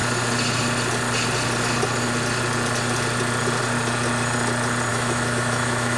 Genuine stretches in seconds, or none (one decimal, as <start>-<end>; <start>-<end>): 0.0-4.9

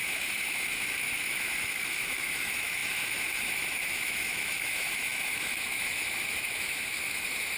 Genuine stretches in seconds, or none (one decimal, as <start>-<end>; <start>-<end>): none

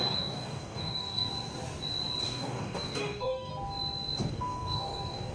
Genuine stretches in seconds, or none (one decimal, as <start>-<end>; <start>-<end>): 1.3-2.2; 3.5-4.3

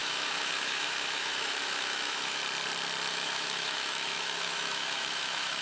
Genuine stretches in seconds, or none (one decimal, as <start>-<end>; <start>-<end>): 2.4-3.1

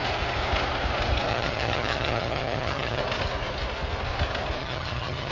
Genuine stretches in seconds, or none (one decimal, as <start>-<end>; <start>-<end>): 0.0-1.3; 3.0-4.6